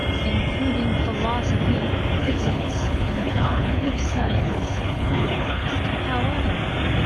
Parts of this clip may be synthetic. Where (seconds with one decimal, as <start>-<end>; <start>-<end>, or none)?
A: 2.2-5.7